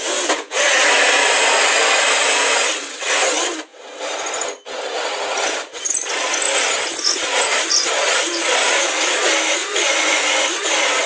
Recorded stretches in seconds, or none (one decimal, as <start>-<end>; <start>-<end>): 0.0-9.6; 10.6-11.1

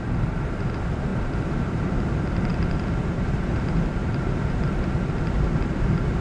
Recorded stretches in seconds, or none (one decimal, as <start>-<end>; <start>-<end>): 0.0-1.1; 1.9-2.5; 3.5-4.0; 4.9-6.2

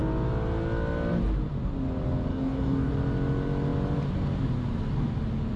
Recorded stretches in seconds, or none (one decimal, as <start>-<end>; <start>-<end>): 0.0-2.3; 2.9-5.6